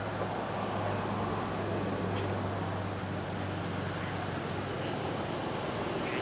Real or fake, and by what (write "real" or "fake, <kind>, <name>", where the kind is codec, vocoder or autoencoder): real